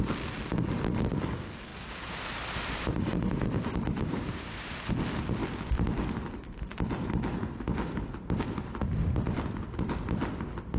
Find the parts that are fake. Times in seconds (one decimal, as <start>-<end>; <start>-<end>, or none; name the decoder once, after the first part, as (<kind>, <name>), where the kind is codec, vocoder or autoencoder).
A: 1.7-4.9 (vocoder, BigVGAN v2)